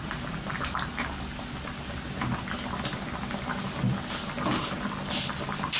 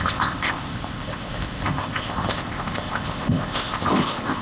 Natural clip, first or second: first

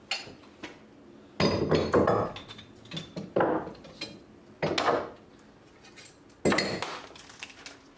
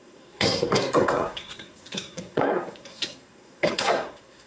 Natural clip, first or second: first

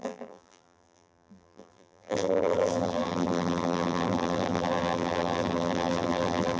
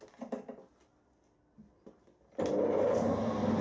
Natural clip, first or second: second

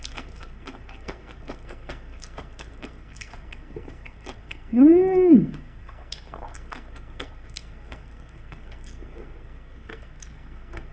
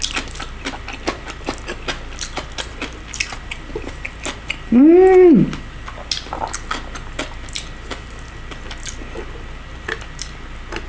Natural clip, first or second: second